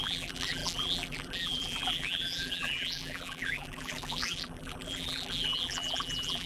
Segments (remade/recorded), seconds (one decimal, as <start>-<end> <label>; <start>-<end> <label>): 0.0-6.5 remade